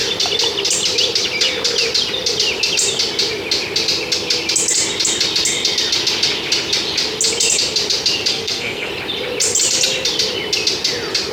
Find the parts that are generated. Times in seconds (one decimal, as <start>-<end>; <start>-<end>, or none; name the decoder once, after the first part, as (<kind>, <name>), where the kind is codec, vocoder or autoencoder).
8.3-8.9 (codec, SNAC)